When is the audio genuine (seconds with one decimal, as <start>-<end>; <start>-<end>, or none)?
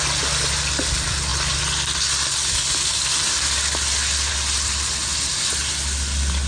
0.0-6.5